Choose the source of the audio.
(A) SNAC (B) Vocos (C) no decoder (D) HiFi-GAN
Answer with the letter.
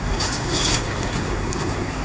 A